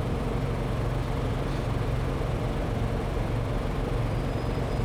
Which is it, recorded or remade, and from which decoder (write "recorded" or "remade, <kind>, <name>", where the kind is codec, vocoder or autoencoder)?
remade, vocoder, BigVGAN v2